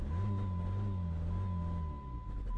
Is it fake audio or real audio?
real